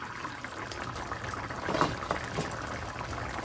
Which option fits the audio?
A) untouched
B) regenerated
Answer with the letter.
A